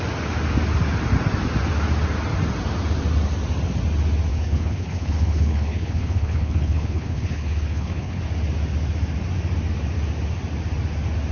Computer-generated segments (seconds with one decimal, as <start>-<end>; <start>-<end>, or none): 4.3-8.2